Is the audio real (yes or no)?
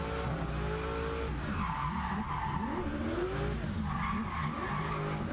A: yes